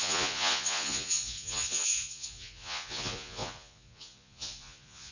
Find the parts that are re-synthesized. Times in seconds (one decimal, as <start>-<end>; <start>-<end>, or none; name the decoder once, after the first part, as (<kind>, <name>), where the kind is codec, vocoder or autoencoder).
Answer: 0.0-5.1 (vocoder, Vocos)